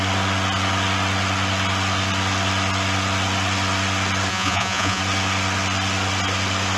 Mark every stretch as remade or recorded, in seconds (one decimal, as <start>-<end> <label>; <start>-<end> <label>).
0.0-4.3 recorded; 4.3-5.0 remade; 5.0-6.8 recorded